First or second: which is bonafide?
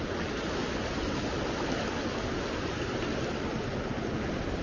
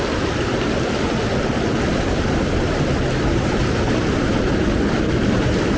first